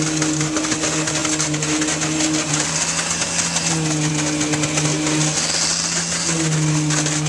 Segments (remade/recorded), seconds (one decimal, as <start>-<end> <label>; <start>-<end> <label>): 0.0-7.3 recorded